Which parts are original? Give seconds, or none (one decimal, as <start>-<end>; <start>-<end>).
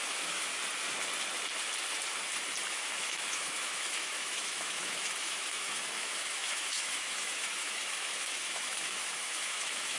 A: 0.5-2.7